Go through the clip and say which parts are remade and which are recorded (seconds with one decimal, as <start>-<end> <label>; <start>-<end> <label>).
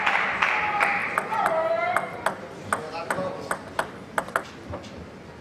0.0-5.4 recorded